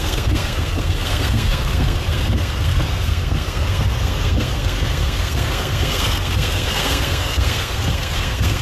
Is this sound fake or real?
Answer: fake